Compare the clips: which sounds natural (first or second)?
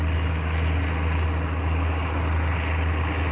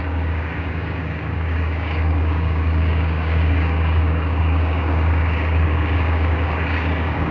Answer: first